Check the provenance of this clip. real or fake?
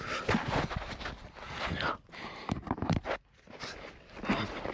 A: real